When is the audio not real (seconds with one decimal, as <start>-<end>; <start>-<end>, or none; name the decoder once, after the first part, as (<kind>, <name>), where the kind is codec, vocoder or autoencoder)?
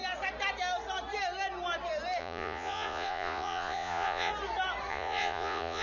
2.2-4.3 (vocoder, Vocos); 4.9-5.8